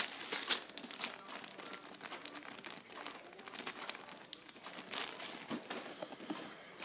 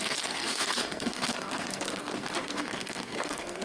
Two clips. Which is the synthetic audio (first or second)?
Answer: second